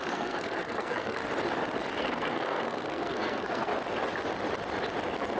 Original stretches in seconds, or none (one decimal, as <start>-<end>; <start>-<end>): 1.2-2.0; 3.7-5.4